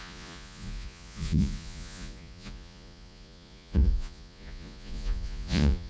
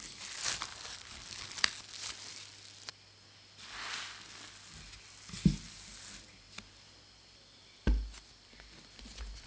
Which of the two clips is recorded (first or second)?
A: second